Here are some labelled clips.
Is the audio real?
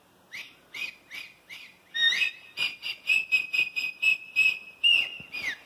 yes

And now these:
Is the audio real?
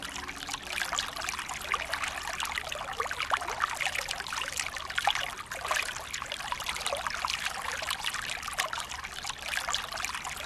yes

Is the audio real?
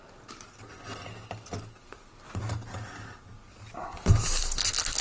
yes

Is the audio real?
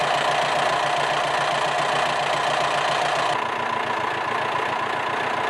yes